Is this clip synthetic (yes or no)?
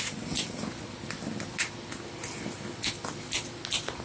no